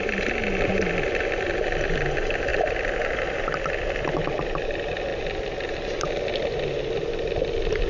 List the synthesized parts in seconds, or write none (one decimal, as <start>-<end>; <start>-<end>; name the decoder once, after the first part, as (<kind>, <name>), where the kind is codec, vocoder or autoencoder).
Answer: none